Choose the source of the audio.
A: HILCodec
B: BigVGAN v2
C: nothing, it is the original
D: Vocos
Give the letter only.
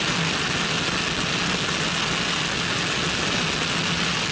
C